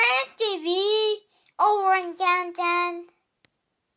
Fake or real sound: real